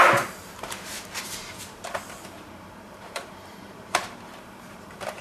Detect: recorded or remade remade